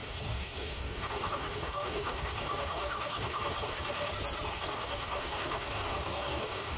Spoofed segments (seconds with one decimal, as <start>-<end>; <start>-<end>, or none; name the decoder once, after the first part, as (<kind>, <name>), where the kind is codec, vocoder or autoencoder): 0.0-4.1 (codec, DAC); 4.5-6.8

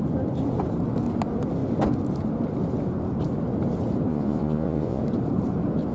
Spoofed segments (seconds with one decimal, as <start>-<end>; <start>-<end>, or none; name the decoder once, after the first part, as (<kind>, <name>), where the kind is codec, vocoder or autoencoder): 4.1-5.0 (vocoder, Vocos)

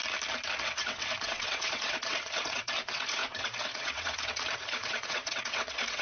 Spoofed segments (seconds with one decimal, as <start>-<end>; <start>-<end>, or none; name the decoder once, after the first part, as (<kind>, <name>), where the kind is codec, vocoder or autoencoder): 0.6-6.0 (vocoder, WaveNeXt)

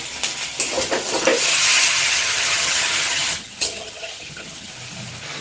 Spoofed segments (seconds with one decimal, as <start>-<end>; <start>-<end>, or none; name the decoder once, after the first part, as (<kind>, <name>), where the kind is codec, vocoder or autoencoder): 1.5-4.7 (vocoder, HiFi-GAN)

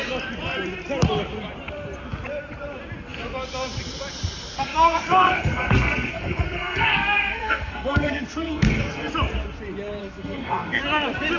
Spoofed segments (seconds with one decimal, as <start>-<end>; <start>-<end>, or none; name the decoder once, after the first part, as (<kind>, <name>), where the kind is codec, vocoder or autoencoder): 4.5-9.1 (codec, SNAC); 10.0-10.8

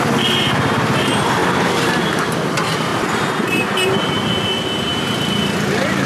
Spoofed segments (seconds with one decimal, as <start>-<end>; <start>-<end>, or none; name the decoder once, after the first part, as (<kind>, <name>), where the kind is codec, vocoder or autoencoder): 0.0-1.4 (vocoder, BigVGAN v2); 2.4-2.9; 4.8-6.1

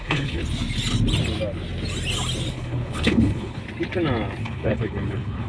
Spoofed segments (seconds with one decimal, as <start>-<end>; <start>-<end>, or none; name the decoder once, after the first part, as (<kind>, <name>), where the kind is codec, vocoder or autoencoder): 0.0-0.4 (codec, HILCodec); 2.5-3.6; 4.4-5.5